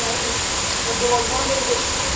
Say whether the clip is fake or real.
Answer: real